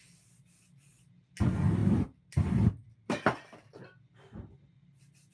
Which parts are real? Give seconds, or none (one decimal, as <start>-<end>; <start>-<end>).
0.0-5.3